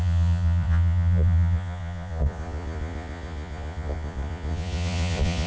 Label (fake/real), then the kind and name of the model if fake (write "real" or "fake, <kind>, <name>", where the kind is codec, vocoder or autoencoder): fake, vocoder, Vocos